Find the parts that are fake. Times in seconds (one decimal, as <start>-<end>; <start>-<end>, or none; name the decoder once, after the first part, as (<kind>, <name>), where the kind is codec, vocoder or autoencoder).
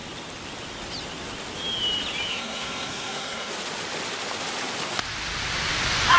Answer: 2.3-3.5 (codec, SNAC)